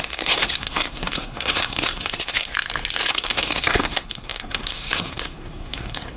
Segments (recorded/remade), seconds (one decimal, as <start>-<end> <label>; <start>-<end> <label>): 0.0-2.5 remade; 2.5-3.1 recorded; 3.1-6.2 remade